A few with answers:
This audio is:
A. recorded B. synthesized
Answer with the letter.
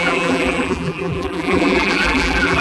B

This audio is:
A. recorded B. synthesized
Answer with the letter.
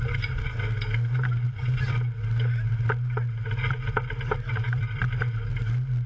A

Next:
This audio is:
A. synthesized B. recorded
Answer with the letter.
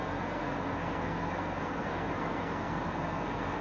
A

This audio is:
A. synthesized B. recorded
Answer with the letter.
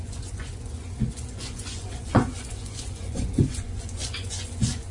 A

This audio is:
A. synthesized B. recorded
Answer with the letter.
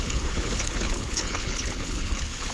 A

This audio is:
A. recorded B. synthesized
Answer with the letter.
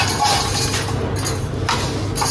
A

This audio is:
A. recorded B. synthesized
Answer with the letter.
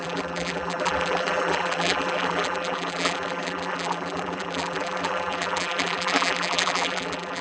B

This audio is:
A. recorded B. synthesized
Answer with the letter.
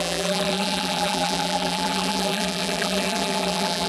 B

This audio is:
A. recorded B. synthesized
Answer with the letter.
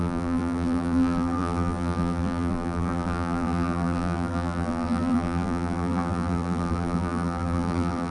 B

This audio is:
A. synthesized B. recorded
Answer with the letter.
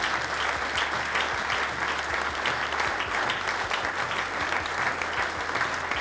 B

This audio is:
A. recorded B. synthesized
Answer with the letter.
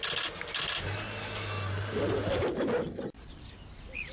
A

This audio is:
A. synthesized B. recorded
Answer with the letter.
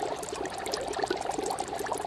B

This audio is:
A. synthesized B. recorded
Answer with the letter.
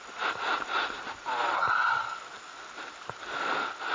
B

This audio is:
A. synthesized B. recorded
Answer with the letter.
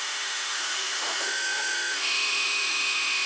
A